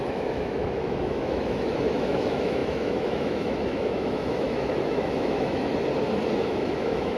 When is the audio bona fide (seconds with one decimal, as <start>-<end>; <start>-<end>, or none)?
5.7-6.4